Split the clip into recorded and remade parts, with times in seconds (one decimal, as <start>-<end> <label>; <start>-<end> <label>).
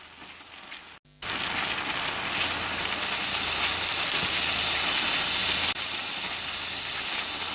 0.0-7.5 recorded